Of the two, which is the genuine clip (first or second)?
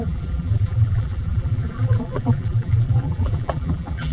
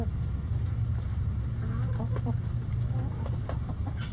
second